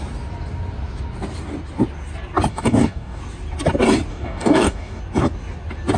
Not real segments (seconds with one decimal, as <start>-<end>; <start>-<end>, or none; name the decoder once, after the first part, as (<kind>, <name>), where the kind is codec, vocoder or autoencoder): 2.5-3.2 (codec, DAC); 4.1-5.0